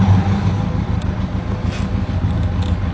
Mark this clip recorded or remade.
recorded